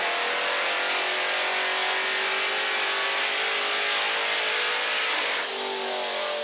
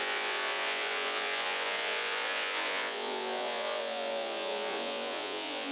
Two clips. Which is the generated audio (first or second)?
second